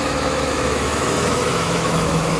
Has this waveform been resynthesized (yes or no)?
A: yes